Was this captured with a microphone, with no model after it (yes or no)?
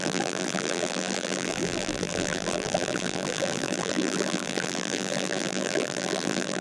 no